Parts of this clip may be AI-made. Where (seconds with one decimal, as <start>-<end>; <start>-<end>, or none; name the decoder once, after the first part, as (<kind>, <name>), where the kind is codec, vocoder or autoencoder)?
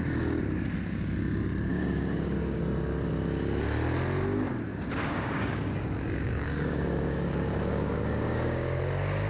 1.7-2.6 (codec, DAC); 4.7-8.8